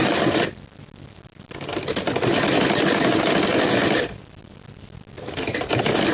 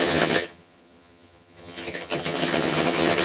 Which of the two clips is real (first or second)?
first